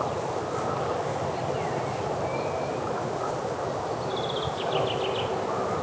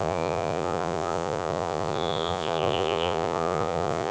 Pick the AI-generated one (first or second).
second